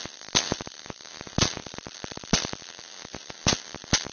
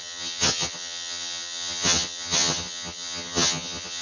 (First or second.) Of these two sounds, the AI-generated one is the second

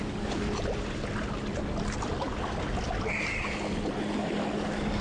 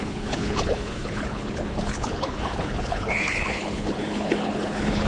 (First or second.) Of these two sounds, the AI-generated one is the second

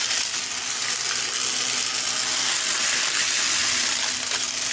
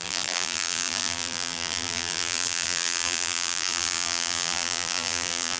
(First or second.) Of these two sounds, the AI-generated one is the second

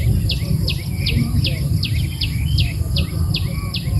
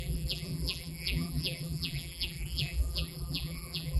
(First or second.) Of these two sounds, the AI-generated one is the second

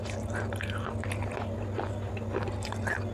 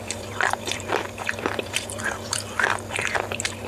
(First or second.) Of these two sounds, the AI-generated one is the second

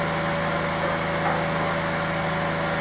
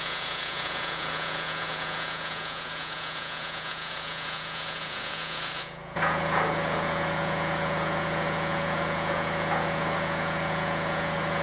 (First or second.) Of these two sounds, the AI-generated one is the second